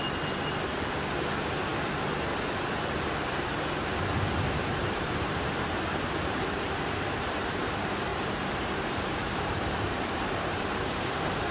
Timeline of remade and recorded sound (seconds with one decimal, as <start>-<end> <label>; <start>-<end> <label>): 0.0-4.8 recorded; 4.8-5.8 remade; 5.8-8.1 recorded; 8.1-11.1 remade; 11.1-11.5 recorded